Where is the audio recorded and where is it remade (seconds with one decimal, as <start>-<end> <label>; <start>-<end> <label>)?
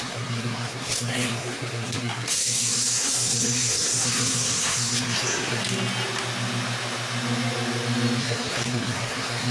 0.0-5.6 remade; 5.6-8.2 recorded; 8.2-9.5 remade